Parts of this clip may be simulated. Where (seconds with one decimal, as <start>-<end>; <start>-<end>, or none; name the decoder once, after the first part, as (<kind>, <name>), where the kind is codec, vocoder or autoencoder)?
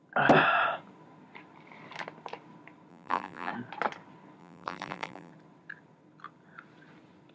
2.9-3.5 (vocoder, BigVGAN v2); 4.4-5.3